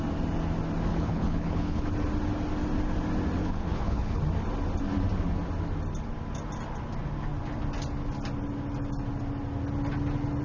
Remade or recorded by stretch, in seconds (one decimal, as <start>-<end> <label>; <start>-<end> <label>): 0.0-0.9 recorded; 0.9-1.9 remade; 1.9-3.4 recorded; 3.4-4.2 remade; 4.2-10.4 recorded